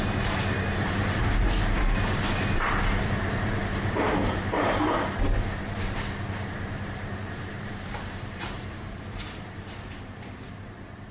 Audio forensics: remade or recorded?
remade